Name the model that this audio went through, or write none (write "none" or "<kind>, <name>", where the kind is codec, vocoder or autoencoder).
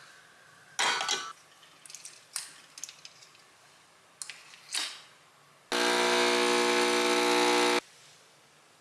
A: none